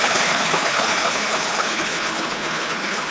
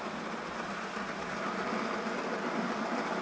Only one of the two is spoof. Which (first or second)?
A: first